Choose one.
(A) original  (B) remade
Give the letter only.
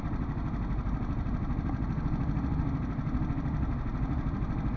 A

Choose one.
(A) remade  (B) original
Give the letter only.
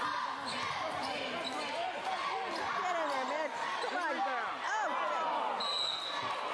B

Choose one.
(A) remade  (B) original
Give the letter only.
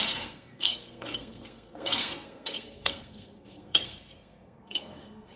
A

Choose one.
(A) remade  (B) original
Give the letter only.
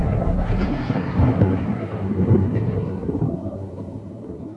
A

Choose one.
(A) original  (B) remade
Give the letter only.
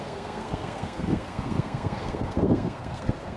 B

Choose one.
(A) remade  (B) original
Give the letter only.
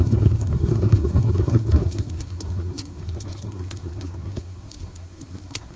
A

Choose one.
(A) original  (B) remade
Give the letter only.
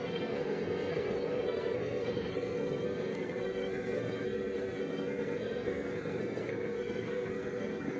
B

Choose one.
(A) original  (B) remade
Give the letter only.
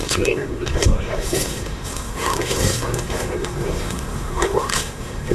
B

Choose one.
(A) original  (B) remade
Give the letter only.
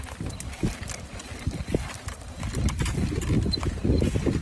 A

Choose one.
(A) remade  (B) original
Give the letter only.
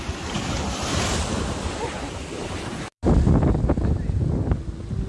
B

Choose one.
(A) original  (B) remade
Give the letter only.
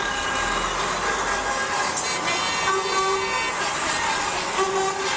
A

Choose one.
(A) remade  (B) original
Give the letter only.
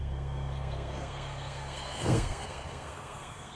A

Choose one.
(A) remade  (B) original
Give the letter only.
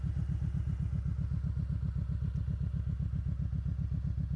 B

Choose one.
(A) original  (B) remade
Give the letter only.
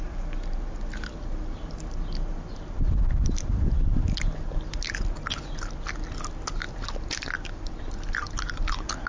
A